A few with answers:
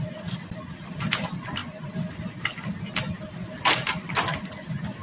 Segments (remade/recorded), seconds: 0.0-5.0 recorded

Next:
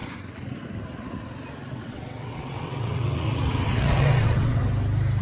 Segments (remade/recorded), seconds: 0.0-1.7 recorded; 1.7-4.6 remade; 4.6-5.2 recorded

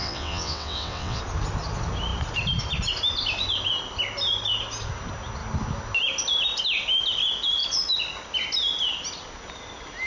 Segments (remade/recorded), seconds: 0.0-1.2 remade; 1.2-10.1 recorded

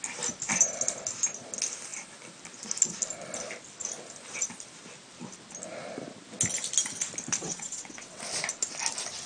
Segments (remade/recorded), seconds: 0.0-7.4 recorded; 7.4-8.2 remade; 8.2-9.3 recorded

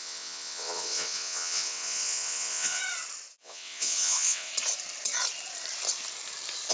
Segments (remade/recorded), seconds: 0.0-2.8 remade; 2.8-3.4 recorded; 3.4-4.5 remade; 4.5-6.7 recorded